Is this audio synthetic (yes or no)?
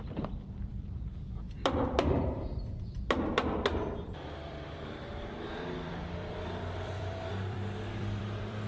yes